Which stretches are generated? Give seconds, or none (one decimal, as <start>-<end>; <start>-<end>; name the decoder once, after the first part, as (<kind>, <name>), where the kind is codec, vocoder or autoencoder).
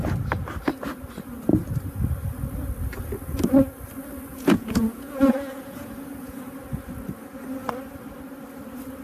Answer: 4.3-6.6 (vocoder, Vocos)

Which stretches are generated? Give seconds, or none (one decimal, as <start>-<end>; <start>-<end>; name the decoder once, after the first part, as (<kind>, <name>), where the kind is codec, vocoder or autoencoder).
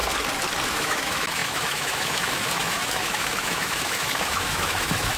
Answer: 0.7-5.2 (autoencoder, DAC-VAE)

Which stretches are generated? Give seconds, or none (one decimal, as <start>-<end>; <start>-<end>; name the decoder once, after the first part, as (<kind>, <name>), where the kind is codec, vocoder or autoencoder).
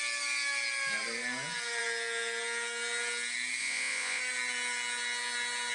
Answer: 3.6-4.2 (vocoder, Vocos)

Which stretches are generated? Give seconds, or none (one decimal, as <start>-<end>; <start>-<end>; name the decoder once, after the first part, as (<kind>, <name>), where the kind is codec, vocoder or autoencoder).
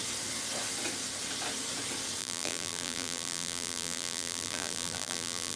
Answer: 2.2-5.6 (vocoder, BigVGAN v2)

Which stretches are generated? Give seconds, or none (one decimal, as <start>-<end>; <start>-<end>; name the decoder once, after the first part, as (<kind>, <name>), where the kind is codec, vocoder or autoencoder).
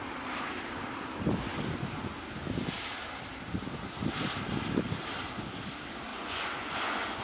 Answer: 6.1-7.2 (vocoder, Vocos)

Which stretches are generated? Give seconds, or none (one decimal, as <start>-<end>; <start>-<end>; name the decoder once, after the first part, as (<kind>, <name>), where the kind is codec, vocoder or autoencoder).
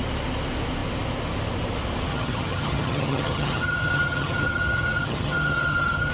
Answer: 2.1-6.1 (vocoder, HiFi-GAN)